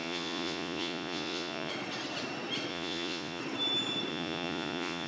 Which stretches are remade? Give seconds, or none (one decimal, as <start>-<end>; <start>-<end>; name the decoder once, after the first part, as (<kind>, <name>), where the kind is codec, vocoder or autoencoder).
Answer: 0.0-1.7 (vocoder, Vocos); 2.7-3.4; 4.1-5.1